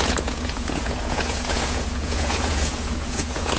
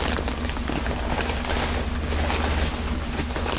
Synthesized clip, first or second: first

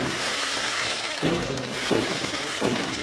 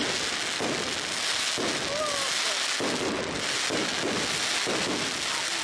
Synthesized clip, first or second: first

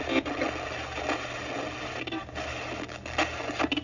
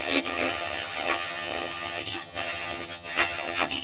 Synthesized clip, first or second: second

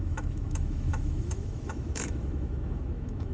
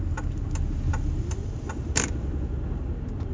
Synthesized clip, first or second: first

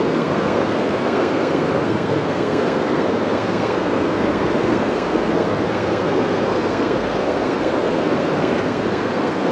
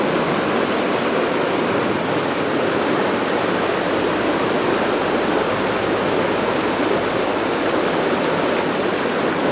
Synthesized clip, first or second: first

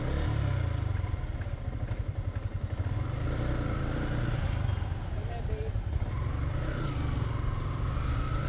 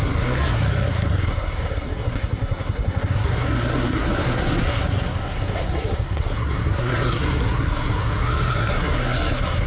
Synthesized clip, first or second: second